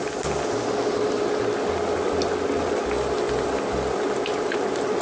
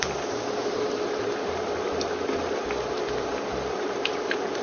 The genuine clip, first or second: first